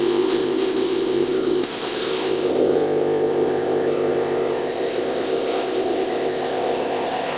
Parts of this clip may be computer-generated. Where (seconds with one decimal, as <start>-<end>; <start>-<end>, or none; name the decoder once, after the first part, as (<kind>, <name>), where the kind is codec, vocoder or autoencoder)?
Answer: 0.0-7.4 (codec, ZipCodec)